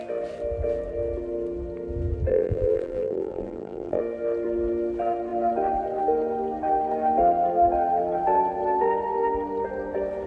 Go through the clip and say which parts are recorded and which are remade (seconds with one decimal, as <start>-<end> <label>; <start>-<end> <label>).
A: 0.0-2.3 recorded; 2.3-4.0 remade; 4.0-10.3 recorded